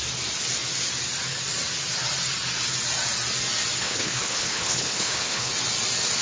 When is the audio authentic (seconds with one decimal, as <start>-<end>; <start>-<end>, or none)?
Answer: 0.0-3.8; 5.5-6.2